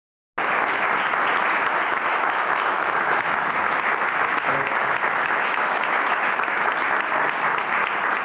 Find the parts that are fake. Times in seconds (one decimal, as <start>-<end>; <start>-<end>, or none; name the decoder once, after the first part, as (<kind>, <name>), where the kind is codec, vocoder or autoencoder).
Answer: 2.1-6.7 (autoencoder, DAC-VAE)